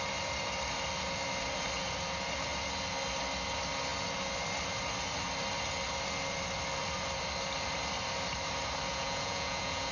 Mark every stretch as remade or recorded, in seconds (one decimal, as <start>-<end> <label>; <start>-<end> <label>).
0.0-8.9 recorded; 8.9-9.9 remade